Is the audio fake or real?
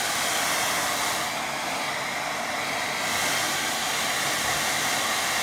real